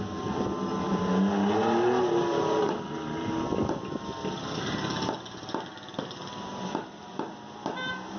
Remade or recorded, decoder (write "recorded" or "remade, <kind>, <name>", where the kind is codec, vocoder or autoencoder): recorded